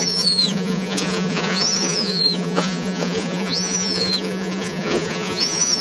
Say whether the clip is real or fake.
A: fake